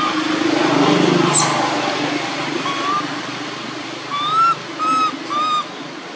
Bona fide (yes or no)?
yes